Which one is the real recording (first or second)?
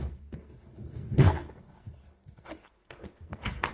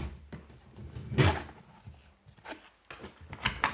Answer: second